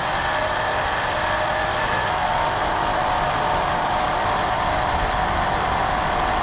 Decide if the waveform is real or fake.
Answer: real